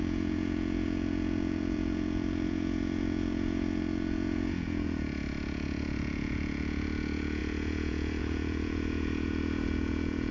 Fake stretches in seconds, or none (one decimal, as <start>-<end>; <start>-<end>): 0.0-10.3